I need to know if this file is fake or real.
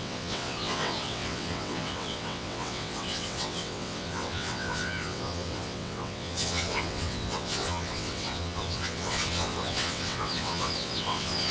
fake